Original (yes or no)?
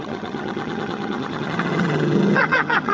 no